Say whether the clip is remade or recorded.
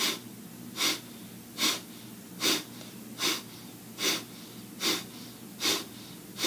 recorded